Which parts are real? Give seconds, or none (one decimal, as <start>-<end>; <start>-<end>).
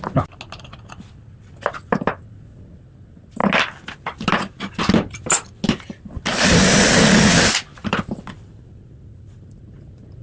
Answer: 0.0-7.8; 9.6-10.2